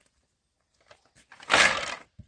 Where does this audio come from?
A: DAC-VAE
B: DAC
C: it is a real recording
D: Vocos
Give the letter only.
C